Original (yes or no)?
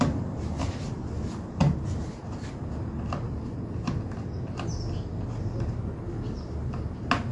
yes